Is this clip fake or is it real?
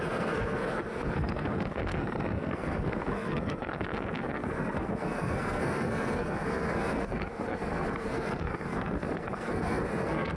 fake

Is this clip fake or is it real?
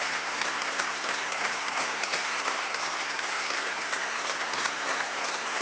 fake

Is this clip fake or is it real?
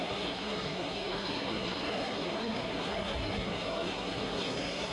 fake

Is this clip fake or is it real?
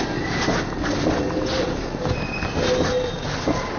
real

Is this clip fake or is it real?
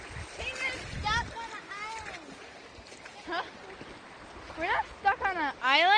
real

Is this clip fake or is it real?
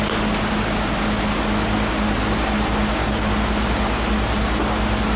real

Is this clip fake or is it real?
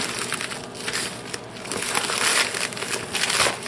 real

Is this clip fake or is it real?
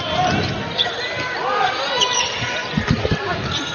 real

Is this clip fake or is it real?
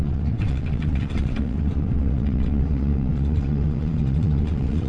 fake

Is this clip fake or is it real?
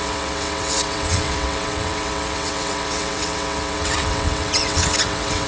fake